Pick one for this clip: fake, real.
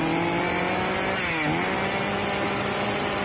real